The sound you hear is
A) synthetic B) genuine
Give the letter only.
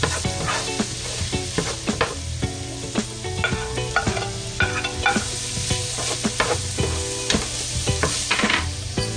B